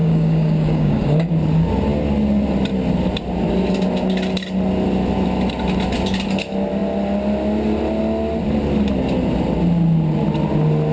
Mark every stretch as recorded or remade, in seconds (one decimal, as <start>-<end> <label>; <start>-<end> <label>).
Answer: 0.0-1.3 remade; 1.3-10.9 recorded